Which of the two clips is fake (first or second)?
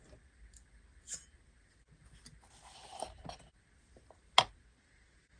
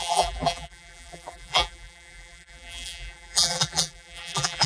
second